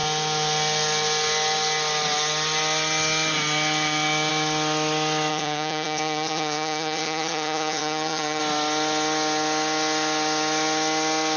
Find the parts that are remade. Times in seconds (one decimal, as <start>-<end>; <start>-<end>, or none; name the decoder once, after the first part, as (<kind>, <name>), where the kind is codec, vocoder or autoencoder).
5.3-8.4 (vocoder, HiFi-GAN)